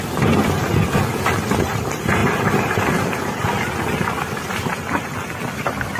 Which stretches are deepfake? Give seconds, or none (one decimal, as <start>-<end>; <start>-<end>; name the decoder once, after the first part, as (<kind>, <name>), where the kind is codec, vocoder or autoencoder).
none